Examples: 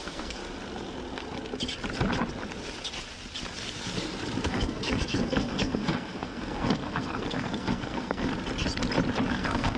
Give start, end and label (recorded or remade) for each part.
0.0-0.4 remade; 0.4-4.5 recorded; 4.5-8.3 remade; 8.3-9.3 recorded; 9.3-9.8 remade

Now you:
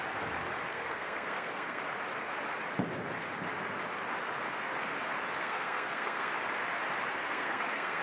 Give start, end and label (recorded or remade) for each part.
0.0-0.7 recorded; 0.7-1.8 remade; 1.8-5.4 recorded; 5.4-6.3 remade; 6.3-7.1 recorded; 7.1-8.0 remade

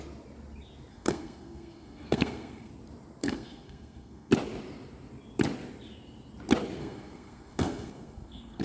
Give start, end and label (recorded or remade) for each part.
0.0-0.9 recorded; 0.9-2.7 remade; 2.7-3.2 recorded; 3.2-4.3 remade; 4.3-6.8 recorded; 6.8-8.6 remade

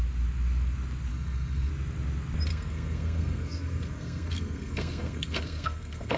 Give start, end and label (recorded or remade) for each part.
0.0-1.1 recorded; 1.1-1.7 remade; 1.7-2.5 recorded; 2.5-6.2 remade

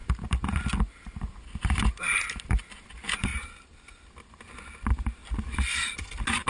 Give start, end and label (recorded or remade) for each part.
0.0-6.5 recorded

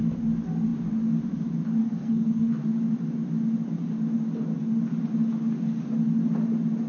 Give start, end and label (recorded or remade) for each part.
0.0-1.8 recorded; 1.8-2.5 remade; 2.5-6.9 recorded